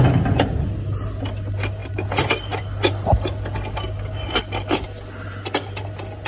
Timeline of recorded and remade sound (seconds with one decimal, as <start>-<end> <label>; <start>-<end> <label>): 0.0-6.3 recorded